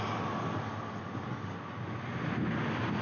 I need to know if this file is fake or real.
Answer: real